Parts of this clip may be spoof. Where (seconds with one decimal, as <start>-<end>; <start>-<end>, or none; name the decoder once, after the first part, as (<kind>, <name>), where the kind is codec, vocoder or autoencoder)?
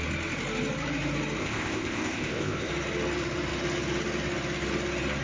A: 1.4-2.7 (codec, ZipCodec)